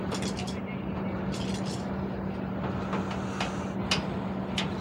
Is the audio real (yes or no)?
yes